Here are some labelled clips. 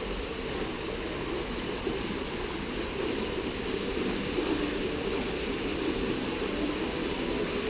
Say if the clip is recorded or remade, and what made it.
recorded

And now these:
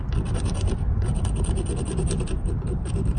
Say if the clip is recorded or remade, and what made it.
remade, vocoder, BigVGAN v2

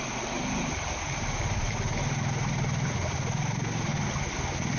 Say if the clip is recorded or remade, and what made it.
recorded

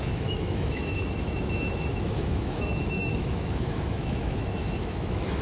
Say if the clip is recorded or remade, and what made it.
remade, autoencoder, DAC-VAE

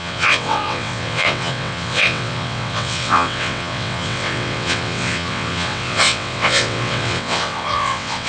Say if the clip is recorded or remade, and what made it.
remade, vocoder, WaveNeXt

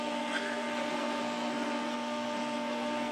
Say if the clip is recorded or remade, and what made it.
remade, codec, SNAC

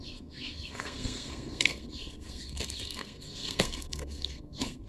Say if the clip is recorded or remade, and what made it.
remade, codec, SNAC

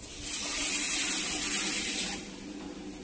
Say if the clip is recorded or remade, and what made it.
recorded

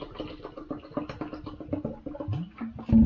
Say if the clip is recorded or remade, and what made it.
recorded